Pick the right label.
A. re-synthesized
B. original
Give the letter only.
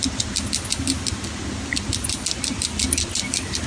B